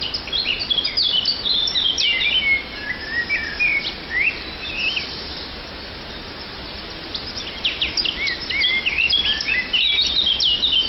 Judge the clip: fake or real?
real